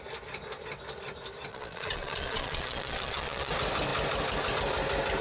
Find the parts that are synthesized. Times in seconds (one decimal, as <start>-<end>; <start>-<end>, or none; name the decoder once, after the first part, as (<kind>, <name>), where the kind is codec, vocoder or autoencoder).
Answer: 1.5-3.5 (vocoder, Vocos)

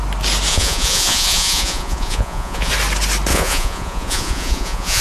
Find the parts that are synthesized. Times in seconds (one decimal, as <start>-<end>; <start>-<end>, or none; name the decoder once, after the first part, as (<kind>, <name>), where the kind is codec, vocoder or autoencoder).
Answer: 0.5-2.7 (vocoder, Vocos); 3.3-5.0

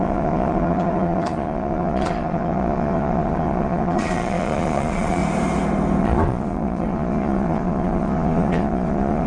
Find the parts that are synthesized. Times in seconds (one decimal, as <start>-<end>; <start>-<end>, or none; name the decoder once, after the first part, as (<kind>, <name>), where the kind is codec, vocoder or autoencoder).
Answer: 0.0-5.2 (vocoder, Vocos); 6.0-9.3